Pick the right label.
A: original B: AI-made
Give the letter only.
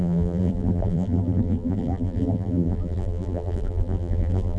B